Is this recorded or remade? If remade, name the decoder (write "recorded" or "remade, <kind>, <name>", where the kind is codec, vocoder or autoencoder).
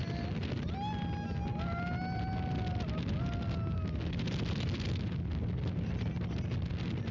recorded